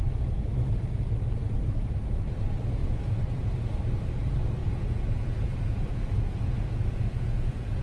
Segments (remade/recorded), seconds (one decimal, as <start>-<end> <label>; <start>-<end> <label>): 0.0-2.8 recorded; 2.8-3.5 remade; 3.5-4.6 recorded; 4.6-7.8 remade